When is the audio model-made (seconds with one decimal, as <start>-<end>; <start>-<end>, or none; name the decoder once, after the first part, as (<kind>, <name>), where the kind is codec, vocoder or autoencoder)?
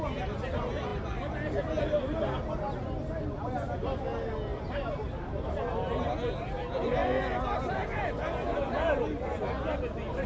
none